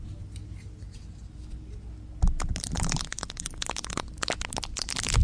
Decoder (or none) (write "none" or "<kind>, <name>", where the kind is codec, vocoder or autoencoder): none